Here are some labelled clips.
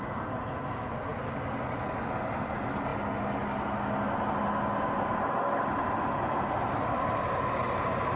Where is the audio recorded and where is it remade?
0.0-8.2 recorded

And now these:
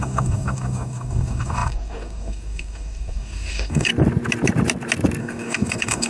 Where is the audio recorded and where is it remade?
0.0-3.9 remade; 3.9-5.2 recorded; 5.2-6.1 remade

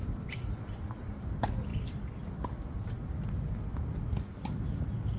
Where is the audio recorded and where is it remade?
0.0-5.2 recorded

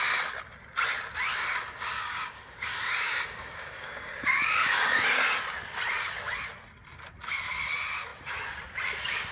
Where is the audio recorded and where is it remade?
0.0-1.3 recorded; 1.3-5.4 remade; 5.4-9.3 recorded

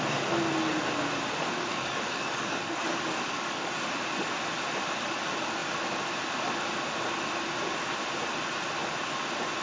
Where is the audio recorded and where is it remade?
0.0-1.7 recorded; 1.7-3.7 remade; 3.7-9.6 recorded

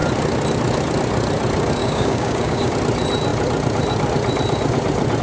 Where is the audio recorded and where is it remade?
0.0-1.8 recorded; 1.8-2.7 remade; 2.7-5.2 recorded

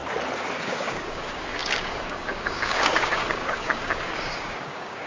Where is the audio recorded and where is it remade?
0.0-0.6 recorded; 0.6-5.1 remade

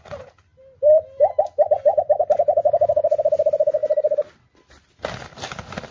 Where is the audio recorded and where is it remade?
0.0-5.9 recorded